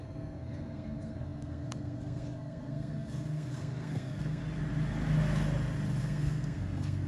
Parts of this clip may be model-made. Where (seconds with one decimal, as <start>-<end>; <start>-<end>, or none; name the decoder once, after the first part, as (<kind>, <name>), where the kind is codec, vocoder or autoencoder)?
0.0-4.4 (codec, SNAC); 6.0-7.1